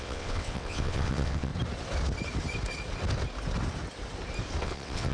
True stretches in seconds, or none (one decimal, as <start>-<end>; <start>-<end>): 1.5-4.6